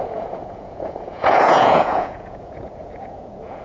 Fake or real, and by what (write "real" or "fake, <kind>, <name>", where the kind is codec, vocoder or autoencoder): fake, vocoder, Vocos